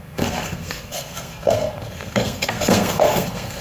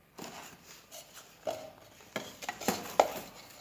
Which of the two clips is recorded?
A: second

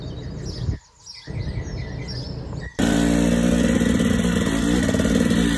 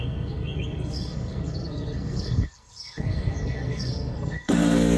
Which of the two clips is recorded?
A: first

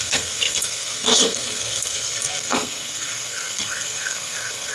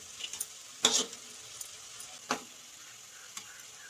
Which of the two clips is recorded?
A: second